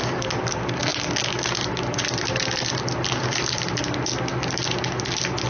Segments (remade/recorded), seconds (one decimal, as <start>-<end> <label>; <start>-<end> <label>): 0.0-5.5 recorded